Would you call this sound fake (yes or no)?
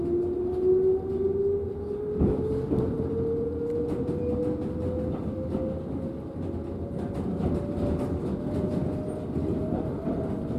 no